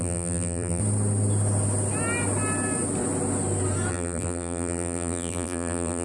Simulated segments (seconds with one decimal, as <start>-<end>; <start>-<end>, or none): 0.0-0.8; 3.9-6.0